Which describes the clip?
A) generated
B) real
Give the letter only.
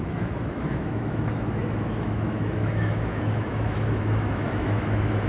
A